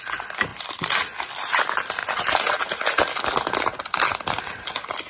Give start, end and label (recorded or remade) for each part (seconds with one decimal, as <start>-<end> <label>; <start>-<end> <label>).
0.0-0.5 recorded; 0.5-1.6 remade; 1.6-2.0 recorded; 2.0-2.6 remade; 2.6-5.1 recorded